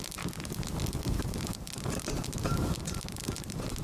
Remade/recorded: recorded